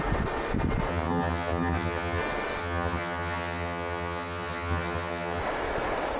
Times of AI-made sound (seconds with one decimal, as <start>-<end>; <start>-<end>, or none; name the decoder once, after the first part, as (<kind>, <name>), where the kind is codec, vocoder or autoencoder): 0.9-2.2 (vocoder, HiFi-GAN); 2.6-5.4